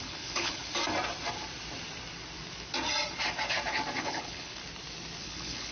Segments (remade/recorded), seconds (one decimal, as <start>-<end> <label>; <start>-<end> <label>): 0.0-0.6 remade; 0.6-4.0 recorded; 4.0-4.6 remade; 4.6-5.2 recorded; 5.2-5.7 remade